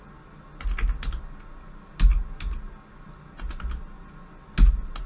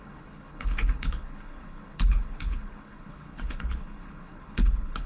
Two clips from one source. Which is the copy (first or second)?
second